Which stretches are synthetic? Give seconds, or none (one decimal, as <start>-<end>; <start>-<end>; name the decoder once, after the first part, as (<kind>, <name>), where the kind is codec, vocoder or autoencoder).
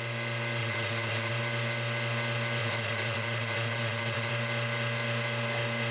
0.6-1.3 (vocoder, Vocos); 2.6-4.3